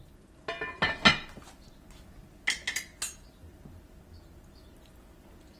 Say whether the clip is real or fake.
real